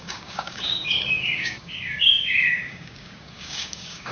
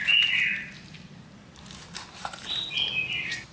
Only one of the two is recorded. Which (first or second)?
second